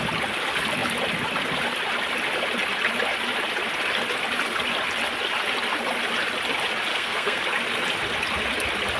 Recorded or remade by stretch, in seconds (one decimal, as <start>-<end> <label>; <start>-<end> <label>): 0.0-6.9 recorded; 6.9-7.4 remade; 7.4-9.0 recorded